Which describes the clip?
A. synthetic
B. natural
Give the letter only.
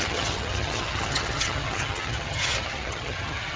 A